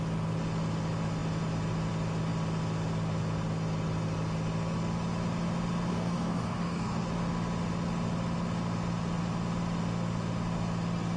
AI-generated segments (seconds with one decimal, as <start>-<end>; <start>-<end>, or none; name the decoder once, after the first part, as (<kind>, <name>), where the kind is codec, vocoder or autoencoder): 5.9-7.1 (codec, DAC)